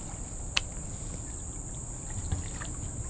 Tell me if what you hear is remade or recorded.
recorded